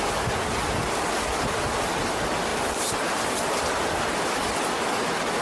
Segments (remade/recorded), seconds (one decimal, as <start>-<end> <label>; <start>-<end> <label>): 0.0-5.4 recorded